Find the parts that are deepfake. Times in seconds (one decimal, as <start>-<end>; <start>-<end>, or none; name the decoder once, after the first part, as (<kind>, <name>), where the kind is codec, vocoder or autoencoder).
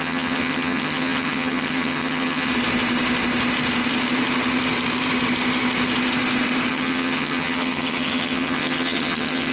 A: 0.0-2.5 (vocoder, HiFi-GAN); 6.7-9.5